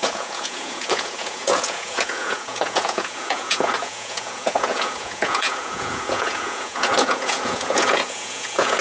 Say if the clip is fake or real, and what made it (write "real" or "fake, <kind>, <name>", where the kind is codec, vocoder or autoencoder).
fake, vocoder, Vocos